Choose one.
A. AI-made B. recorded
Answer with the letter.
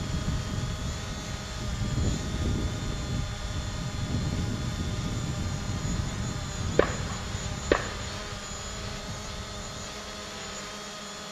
B